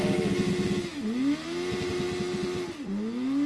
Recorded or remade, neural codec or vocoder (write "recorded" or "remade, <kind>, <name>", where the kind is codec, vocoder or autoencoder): recorded